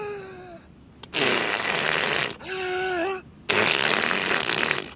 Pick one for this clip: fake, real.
real